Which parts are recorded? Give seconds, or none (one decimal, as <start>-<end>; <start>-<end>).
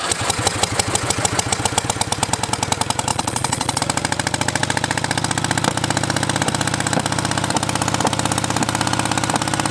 0.0-3.1; 3.8-9.7